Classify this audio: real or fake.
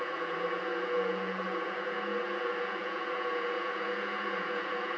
fake